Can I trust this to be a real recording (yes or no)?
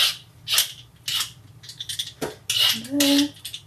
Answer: yes